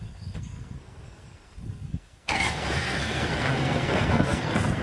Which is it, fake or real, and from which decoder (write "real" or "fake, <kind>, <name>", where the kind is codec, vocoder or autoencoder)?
fake, codec, SNAC